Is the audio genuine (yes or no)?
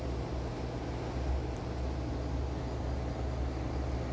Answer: yes